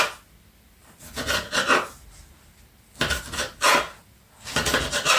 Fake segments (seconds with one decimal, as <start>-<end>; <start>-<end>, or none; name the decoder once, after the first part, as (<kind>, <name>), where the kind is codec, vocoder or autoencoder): none